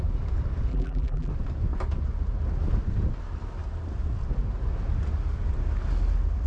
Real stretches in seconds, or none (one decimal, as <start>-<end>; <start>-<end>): 0.0-0.7; 1.3-6.5